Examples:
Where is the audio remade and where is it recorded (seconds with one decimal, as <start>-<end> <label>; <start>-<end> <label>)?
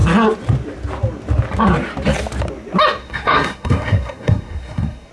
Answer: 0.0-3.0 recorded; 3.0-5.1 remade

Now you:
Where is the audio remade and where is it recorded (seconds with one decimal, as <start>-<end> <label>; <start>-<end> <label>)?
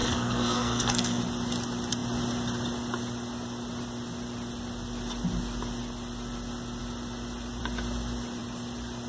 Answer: 0.0-1.2 remade; 1.2-9.1 recorded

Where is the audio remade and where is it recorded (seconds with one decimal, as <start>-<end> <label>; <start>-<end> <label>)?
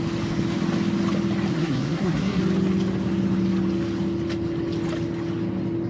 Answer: 0.0-1.5 recorded; 1.5-2.4 remade; 2.4-5.9 recorded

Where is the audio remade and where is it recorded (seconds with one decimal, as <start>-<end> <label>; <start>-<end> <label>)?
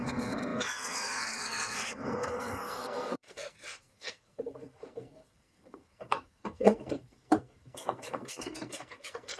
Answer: 0.0-9.4 remade